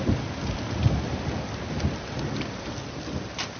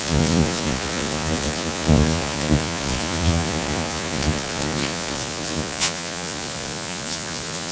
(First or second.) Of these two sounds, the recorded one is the first